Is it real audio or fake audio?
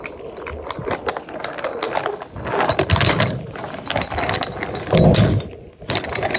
real